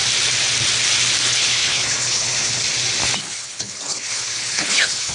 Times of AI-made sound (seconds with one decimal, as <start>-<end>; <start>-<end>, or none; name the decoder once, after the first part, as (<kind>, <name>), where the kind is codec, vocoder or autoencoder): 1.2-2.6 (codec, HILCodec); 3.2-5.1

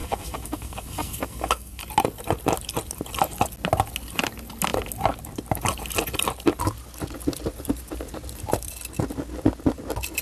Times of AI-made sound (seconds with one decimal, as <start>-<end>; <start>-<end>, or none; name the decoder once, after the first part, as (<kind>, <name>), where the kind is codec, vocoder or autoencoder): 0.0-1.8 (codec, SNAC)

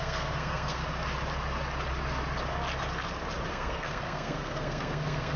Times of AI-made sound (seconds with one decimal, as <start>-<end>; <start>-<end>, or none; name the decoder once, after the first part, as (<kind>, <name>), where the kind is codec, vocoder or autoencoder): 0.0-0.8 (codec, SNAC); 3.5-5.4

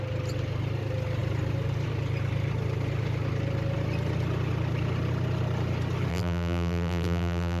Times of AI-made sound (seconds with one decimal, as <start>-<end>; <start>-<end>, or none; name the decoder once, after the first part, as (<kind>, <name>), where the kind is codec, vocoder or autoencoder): 6.1-7.6 (vocoder, BigVGAN v2)